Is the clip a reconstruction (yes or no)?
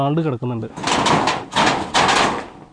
no